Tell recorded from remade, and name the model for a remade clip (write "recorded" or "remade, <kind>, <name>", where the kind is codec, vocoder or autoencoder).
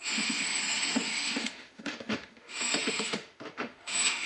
remade, autoencoder, DAC-VAE